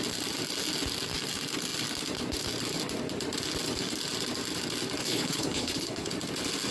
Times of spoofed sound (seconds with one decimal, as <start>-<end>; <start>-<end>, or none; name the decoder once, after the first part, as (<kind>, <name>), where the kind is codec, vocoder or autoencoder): 5.0-6.1 (codec, HILCodec)